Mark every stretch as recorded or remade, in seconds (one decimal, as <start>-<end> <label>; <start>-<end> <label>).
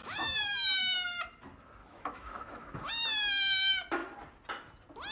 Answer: 0.0-1.2 remade; 1.2-1.8 recorded; 1.8-2.9 remade; 2.9-5.1 recorded